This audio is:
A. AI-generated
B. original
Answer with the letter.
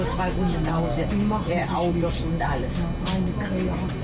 B